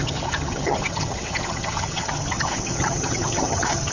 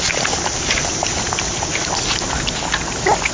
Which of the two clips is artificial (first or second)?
first